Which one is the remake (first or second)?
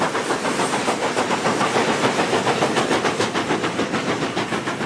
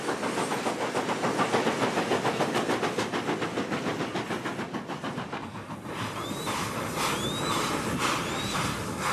first